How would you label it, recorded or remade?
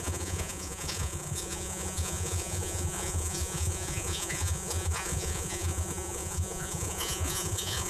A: remade